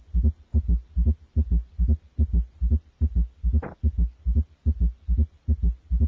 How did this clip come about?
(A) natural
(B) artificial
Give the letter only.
A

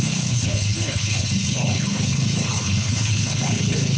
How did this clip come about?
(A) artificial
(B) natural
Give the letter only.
A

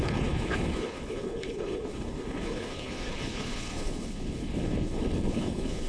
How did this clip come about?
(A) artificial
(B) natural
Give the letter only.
A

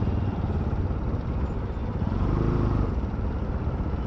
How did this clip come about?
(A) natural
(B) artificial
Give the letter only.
A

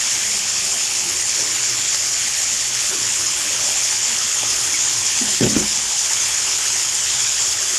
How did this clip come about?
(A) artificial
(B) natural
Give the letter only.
A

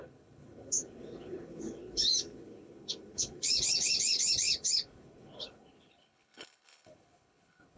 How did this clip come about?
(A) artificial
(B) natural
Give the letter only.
A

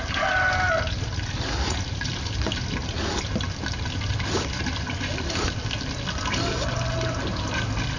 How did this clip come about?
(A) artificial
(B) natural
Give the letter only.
B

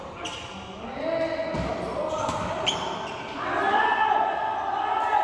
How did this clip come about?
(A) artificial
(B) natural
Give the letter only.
B